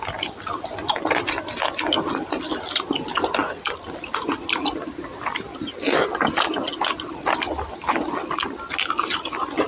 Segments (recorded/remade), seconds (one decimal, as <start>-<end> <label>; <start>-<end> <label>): 0.0-9.7 recorded